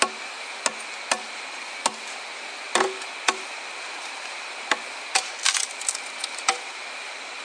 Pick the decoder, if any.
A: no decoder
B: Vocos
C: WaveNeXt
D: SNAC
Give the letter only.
A